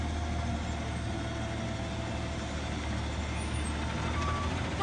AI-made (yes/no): no